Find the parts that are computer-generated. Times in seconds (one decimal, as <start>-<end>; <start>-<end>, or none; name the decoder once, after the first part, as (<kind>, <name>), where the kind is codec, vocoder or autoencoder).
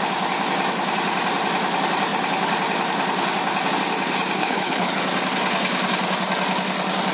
4.4-4.9 (codec, HILCodec)